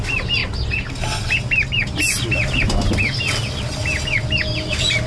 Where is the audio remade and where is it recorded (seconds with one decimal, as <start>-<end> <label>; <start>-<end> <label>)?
0.0-5.1 recorded